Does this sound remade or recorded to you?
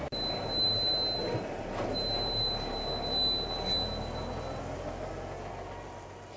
recorded